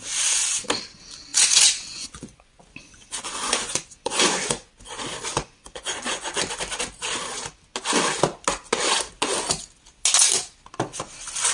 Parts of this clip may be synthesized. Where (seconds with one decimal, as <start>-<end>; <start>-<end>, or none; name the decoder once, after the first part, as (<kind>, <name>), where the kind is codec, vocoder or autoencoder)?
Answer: 1.3-4.7 (vocoder, Vocos); 5.3-6.4